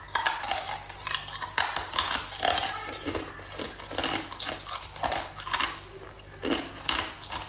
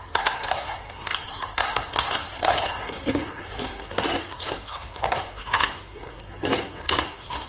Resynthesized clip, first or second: second